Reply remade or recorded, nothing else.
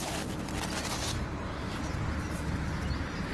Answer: recorded